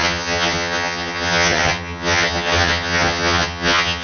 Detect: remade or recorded remade